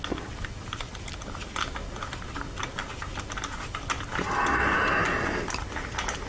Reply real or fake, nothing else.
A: real